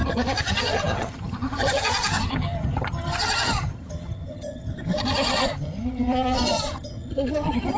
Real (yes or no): no